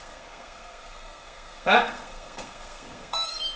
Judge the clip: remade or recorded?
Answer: remade